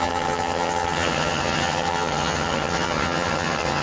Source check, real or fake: fake